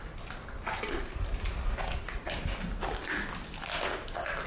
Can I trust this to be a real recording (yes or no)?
yes